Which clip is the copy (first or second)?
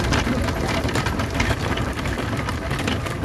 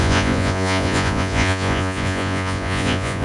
second